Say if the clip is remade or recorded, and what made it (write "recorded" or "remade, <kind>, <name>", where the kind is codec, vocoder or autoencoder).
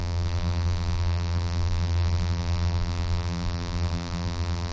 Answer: remade, vocoder, BigVGAN v2